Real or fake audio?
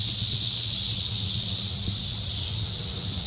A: fake